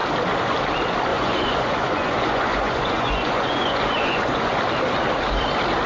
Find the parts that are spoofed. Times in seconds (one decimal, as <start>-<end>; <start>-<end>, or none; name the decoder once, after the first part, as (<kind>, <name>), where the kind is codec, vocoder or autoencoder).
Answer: 1.1-4.6 (vocoder, Vocos)